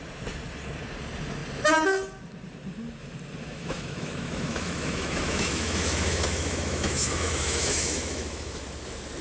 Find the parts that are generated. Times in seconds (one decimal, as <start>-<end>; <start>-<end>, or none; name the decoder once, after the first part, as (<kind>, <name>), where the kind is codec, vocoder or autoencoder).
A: 3.5-8.6 (autoencoder, DAC-VAE)